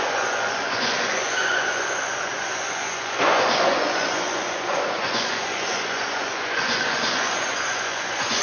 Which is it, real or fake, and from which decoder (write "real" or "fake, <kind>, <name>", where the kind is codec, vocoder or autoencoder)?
fake, vocoder, Vocos